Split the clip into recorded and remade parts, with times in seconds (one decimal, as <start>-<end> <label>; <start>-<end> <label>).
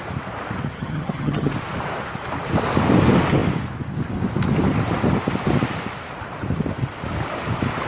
0.0-0.7 recorded; 0.7-1.5 remade; 1.5-7.9 recorded